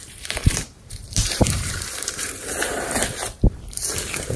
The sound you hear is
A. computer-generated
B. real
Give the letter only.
A